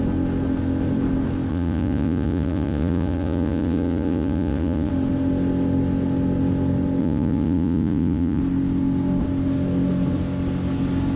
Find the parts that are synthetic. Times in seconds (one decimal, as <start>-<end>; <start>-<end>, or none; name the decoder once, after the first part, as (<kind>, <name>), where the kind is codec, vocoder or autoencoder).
1.5-4.9 (vocoder, Vocos); 7.0-8.4